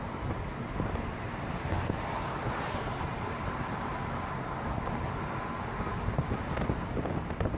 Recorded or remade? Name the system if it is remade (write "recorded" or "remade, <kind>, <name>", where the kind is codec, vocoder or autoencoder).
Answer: recorded